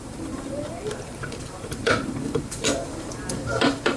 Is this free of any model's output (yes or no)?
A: no